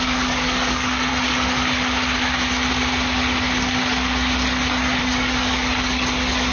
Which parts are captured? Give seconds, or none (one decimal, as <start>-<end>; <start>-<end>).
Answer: 1.1-5.0